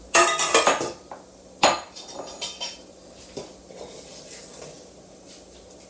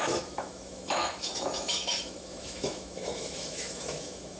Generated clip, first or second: second